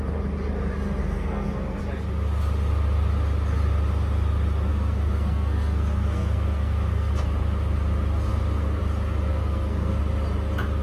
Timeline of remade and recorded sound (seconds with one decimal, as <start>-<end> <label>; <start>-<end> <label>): 0.0-1.0 recorded; 1.0-1.8 remade; 1.8-4.7 recorded; 4.7-7.1 remade; 7.1-8.3 recorded; 8.3-8.8 remade; 8.8-9.3 recorded; 9.3-10.0 remade; 10.0-10.8 recorded